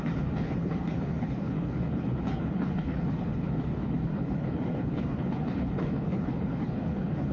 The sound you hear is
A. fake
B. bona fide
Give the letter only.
A